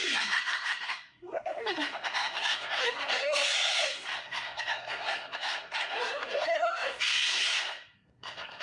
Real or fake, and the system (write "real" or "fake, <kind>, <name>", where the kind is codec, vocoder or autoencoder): fake, codec, SNAC